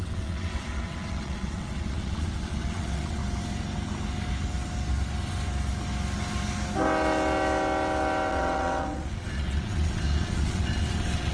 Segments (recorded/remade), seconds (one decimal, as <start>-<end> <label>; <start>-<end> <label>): 0.0-3.2 remade; 3.2-8.3 recorded; 8.3-11.3 remade